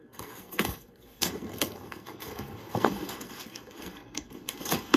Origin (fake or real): fake